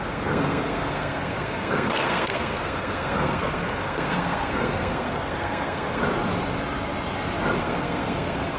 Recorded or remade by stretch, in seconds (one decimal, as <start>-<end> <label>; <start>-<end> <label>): 0.0-6.0 remade; 6.0-7.6 recorded; 7.6-8.6 remade